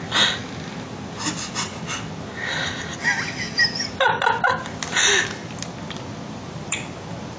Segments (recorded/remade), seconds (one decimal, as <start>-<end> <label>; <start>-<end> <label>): 0.0-7.4 recorded